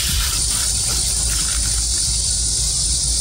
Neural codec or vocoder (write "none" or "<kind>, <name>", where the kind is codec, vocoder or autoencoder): none